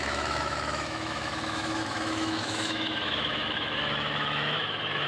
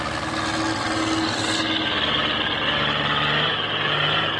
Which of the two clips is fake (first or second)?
first